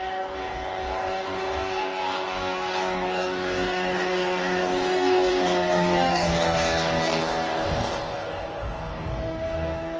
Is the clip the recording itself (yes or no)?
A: no